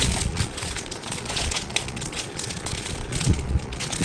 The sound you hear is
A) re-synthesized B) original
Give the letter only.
A